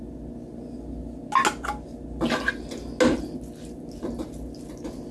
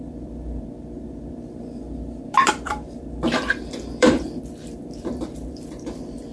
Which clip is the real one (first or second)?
first